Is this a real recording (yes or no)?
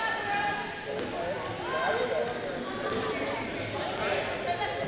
yes